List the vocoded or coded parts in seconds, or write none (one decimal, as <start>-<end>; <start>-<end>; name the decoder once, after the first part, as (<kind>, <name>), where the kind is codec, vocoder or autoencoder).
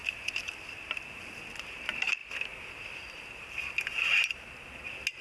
none